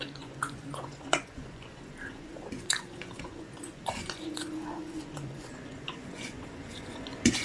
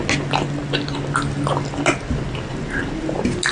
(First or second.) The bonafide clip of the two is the second